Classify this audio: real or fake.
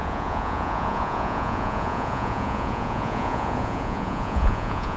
fake